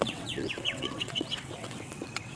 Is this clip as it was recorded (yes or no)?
no